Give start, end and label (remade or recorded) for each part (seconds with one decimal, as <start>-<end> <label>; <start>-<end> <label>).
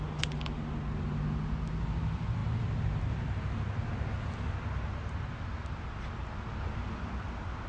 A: 0.0-7.7 recorded